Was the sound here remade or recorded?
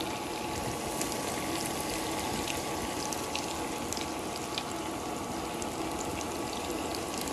recorded